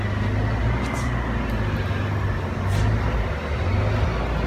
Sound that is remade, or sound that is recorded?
recorded